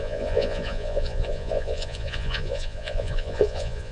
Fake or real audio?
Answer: fake